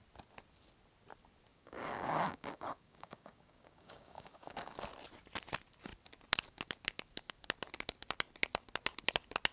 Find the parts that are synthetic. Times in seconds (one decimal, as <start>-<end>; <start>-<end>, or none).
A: 1.5-4.8